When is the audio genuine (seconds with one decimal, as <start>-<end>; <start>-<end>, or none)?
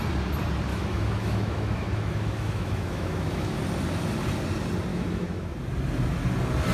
0.0-0.7; 3.6-4.9; 5.5-6.7